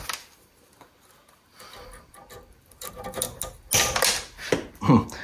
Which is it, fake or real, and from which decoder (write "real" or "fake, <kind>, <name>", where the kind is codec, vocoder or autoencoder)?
real